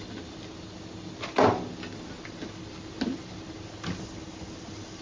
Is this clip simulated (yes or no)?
no